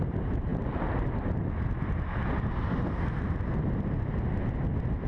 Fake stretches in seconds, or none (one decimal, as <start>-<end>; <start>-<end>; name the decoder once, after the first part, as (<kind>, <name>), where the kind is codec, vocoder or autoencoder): 0.5-3.6 (vocoder, BigVGAN v2)